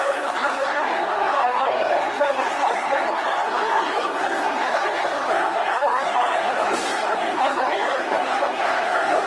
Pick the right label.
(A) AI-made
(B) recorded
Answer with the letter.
A